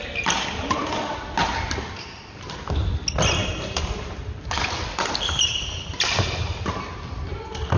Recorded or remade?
recorded